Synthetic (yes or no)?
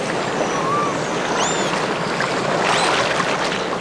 no